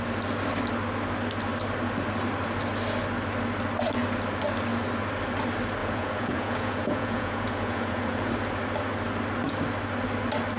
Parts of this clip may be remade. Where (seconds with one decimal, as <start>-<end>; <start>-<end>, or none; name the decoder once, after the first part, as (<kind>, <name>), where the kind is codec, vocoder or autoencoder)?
5.8-8.3 (vocoder, Vocos)